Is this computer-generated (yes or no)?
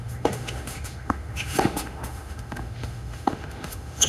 yes